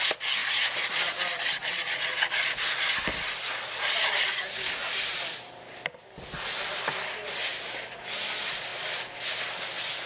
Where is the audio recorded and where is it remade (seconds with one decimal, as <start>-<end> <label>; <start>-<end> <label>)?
0.0-10.1 recorded